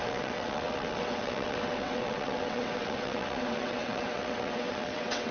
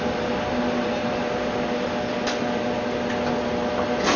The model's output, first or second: first